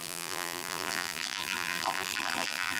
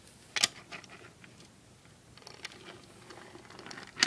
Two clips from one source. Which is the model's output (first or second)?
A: first